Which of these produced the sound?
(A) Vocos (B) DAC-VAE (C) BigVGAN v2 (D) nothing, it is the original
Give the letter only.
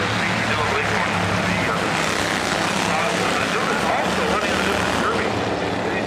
D